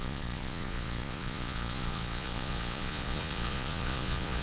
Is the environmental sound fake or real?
fake